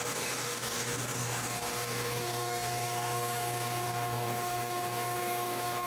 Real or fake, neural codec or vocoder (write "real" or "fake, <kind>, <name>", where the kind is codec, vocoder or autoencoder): fake, codec, DAC